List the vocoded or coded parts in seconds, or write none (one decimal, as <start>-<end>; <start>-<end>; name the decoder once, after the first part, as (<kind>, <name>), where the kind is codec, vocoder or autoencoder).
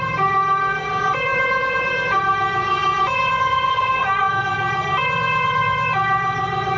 3.7-4.4 (codec, SNAC)